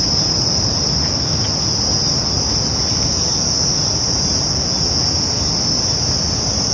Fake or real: real